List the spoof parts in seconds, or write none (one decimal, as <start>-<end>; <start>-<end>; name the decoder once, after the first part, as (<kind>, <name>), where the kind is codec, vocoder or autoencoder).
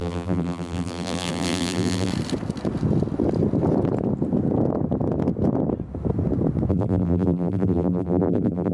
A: 0.0-2.1 (vocoder, BigVGAN v2); 6.7-8.7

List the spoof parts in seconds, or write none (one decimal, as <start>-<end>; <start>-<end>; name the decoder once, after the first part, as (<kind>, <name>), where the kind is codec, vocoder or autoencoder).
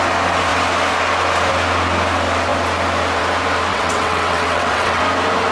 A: 3.7-5.0 (vocoder, WaveNeXt)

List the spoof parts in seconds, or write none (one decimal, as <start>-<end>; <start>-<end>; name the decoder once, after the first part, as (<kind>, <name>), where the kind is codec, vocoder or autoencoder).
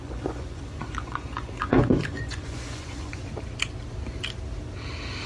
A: 0.0-3.2 (vocoder, Vocos)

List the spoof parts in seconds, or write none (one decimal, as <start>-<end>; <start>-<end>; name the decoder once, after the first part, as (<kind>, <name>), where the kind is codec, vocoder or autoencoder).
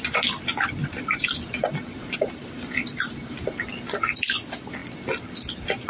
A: 0.8-3.7 (vocoder, BigVGAN v2)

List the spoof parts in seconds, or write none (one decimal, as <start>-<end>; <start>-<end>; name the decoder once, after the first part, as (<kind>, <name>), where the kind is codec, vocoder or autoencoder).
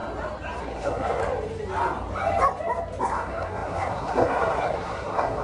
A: 0.6-1.2 (codec, SNAC); 3.0-5.4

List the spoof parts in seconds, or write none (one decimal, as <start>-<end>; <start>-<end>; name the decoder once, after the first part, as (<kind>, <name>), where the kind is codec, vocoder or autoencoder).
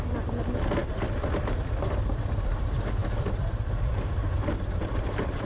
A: none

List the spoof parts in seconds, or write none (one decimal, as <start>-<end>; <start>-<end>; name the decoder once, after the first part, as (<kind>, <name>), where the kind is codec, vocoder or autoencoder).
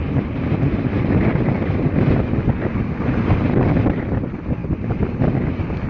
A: none